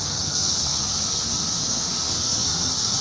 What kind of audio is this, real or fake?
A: fake